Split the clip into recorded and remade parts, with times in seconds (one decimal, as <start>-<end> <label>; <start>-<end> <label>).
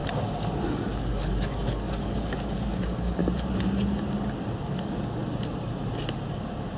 0.0-0.7 recorded; 0.7-3.2 remade; 3.2-4.6 recorded; 4.6-5.2 remade; 5.2-6.8 recorded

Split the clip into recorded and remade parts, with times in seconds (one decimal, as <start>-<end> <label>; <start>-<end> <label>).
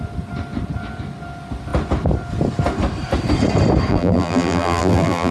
0.0-3.9 recorded; 3.9-5.3 remade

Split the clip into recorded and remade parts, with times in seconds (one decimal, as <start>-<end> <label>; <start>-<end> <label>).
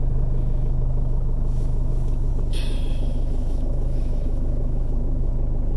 0.0-2.3 remade; 2.3-2.9 recorded; 2.9-5.3 remade; 5.3-5.8 recorded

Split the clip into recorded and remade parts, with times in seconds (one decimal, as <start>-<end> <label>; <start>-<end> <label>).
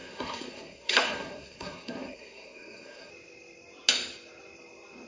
0.0-3.1 remade; 3.1-5.1 recorded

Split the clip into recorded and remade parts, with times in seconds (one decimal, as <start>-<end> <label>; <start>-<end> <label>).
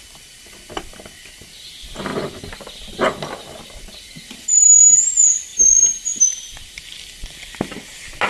0.0-8.3 recorded